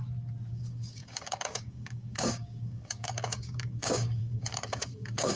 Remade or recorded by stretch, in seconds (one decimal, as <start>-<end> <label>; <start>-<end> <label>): 0.0-0.5 recorded; 0.5-5.4 remade